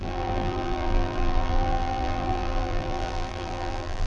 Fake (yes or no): yes